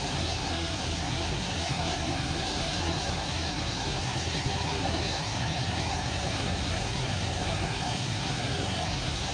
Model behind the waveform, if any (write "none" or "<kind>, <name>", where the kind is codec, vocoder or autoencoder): codec, SNAC